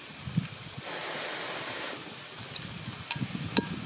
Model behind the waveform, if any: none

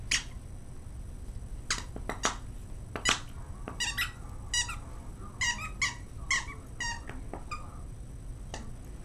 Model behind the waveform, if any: none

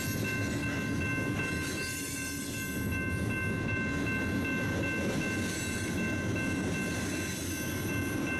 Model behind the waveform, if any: none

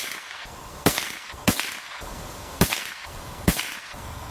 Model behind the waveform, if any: codec, SNAC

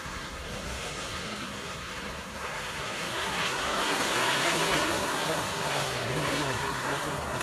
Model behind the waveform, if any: codec, SNAC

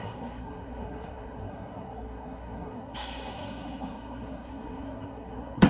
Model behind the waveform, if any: codec, SNAC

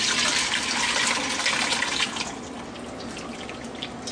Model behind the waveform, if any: none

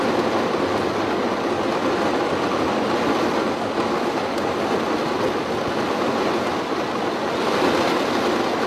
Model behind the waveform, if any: none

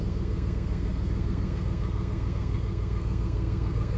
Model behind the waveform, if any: codec, SNAC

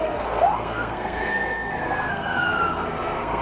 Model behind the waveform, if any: codec, SNAC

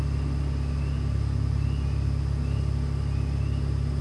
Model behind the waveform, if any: none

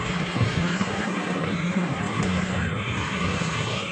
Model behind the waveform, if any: codec, SNAC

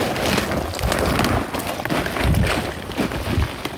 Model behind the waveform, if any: none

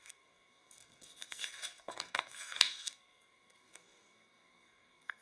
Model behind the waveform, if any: codec, SNAC